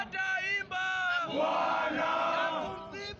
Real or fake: fake